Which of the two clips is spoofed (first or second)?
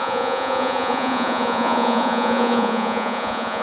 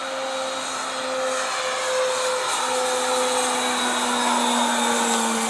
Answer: first